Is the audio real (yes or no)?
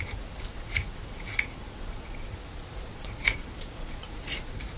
no